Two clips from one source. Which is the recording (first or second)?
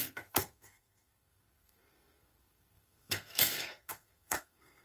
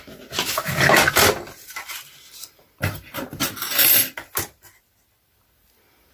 second